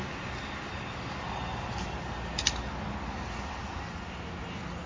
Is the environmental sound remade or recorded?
recorded